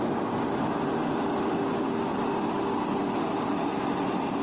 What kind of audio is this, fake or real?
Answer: real